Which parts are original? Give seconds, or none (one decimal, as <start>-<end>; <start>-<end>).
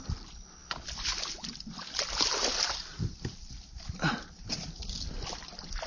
0.0-5.9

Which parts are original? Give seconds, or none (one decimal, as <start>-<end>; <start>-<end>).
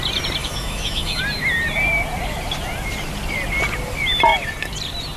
0.0-0.4; 1.2-5.2